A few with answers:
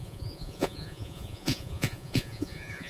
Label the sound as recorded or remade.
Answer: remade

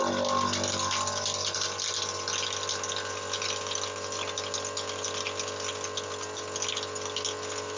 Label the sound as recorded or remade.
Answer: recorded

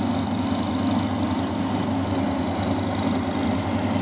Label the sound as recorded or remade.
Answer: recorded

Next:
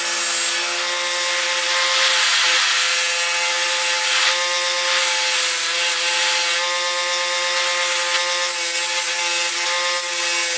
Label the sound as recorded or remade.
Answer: recorded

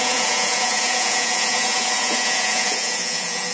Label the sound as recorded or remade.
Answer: remade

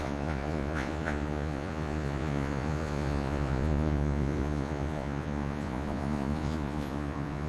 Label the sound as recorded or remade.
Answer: remade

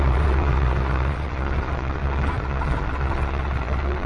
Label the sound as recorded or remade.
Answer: remade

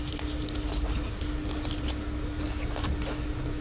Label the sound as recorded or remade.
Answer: recorded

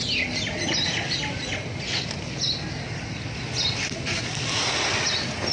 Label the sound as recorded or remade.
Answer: recorded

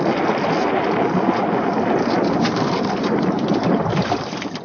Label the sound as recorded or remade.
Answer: recorded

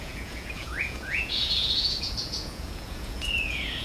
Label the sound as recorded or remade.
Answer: remade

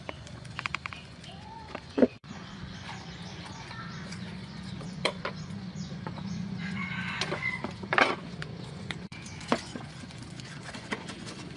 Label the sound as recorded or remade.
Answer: remade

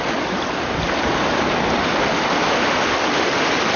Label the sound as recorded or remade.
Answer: recorded